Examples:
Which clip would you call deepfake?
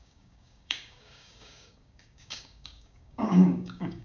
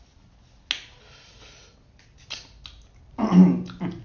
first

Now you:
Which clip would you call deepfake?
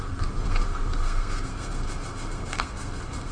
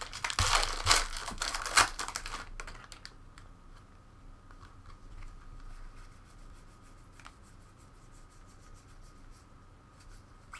first